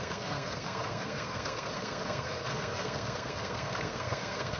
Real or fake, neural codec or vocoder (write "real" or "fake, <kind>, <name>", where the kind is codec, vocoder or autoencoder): fake, codec, SNAC